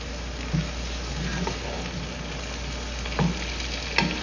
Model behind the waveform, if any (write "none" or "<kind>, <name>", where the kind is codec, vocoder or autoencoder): none